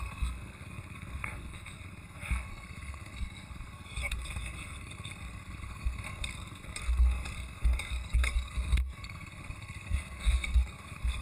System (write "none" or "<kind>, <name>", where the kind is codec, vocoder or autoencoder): codec, SNAC